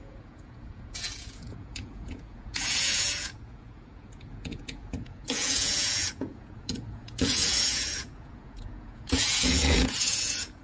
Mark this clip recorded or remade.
remade